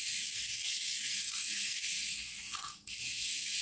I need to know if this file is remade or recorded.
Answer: remade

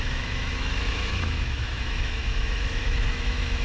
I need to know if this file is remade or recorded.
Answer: remade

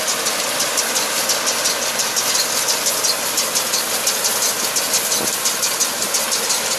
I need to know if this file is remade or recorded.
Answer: recorded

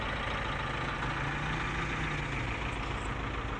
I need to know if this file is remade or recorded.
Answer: recorded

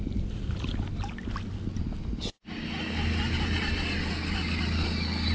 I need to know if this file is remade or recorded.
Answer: recorded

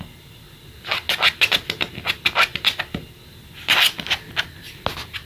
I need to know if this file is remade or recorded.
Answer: recorded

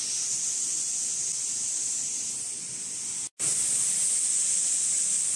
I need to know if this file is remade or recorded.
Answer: recorded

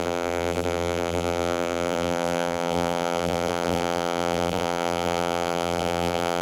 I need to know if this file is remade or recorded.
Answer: remade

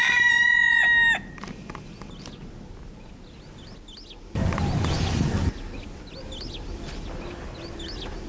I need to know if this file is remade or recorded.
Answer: recorded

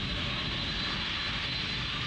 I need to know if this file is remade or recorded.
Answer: recorded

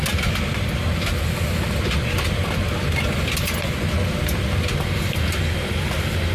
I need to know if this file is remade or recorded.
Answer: recorded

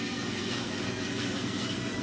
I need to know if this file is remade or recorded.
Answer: remade